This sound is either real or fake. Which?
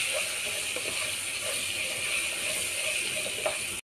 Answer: real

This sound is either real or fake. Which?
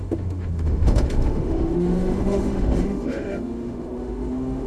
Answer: fake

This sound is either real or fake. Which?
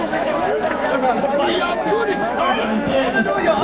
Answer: fake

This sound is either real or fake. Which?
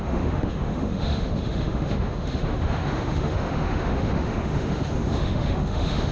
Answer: fake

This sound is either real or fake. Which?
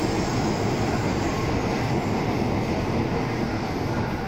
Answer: real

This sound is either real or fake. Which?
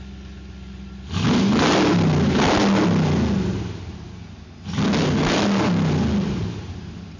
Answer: real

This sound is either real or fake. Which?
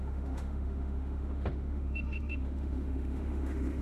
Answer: fake